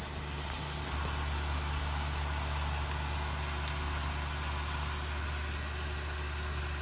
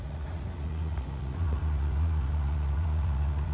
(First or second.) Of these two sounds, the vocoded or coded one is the second